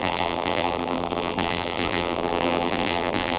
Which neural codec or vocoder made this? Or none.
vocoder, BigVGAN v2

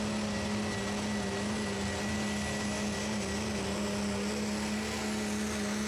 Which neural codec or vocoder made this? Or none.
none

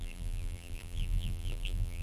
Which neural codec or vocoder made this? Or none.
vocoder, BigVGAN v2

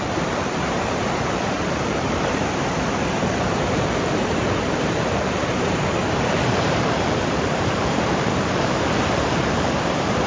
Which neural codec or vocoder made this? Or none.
vocoder, BigVGAN v2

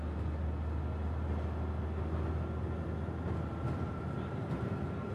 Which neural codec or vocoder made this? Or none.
none